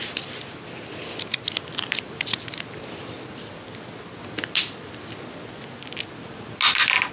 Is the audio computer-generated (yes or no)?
no